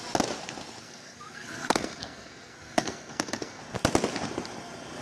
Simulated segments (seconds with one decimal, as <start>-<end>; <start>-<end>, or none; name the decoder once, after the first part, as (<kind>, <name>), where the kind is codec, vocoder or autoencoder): 0.8-3.6 (codec, SNAC)